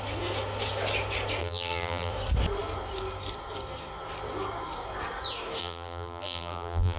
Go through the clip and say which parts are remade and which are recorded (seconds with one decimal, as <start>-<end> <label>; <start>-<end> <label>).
0.0-1.4 recorded; 1.4-2.1 remade; 2.1-5.6 recorded; 5.6-7.0 remade